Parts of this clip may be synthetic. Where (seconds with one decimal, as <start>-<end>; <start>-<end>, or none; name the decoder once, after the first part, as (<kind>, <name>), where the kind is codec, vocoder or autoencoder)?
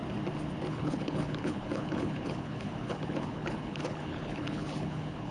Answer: 0.7-5.3 (codec, HILCodec)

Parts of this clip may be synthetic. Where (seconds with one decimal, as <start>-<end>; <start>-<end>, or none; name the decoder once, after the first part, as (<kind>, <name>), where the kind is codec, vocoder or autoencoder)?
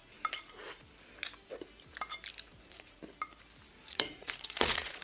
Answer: 2.5-3.0 (vocoder, Vocos); 3.7-5.0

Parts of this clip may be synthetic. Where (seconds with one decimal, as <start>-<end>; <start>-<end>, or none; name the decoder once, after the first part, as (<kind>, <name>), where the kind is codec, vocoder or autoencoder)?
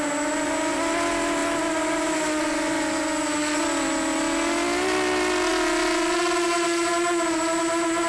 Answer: none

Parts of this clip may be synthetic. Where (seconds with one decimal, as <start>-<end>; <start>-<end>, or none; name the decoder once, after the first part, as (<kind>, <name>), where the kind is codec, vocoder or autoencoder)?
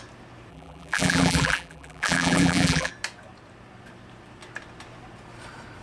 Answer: 0.5-2.9 (vocoder, BigVGAN v2)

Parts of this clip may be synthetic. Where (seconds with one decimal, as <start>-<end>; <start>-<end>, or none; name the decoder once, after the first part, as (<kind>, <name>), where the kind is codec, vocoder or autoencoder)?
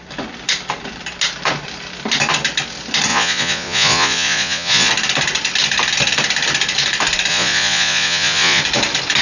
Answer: 3.1-4.9 (vocoder, Vocos); 7.3-8.6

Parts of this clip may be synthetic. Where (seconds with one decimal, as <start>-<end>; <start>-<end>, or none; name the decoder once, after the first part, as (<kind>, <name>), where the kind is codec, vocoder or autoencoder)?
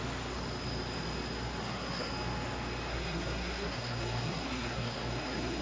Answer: 1.6-2.1 (codec, SNAC); 2.9-5.6